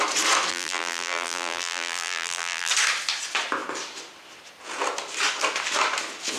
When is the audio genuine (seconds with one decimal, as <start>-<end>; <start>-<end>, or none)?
0.0-0.5; 2.7-6.4